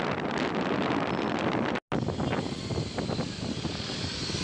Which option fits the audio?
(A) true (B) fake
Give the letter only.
A